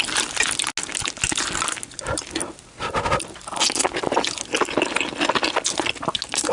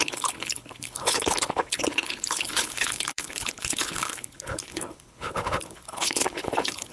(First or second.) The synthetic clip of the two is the second